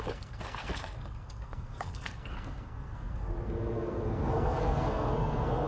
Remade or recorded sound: remade